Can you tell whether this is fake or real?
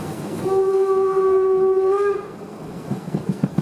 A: fake